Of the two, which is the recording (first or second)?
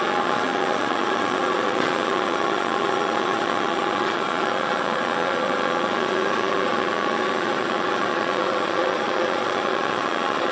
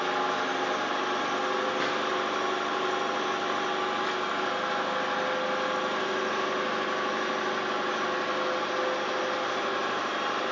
second